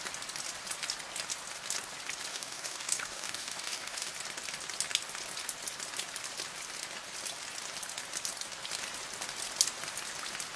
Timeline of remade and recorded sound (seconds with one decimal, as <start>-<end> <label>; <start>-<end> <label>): 0.0-2.3 recorded; 2.3-4.1 remade; 4.1-10.6 recorded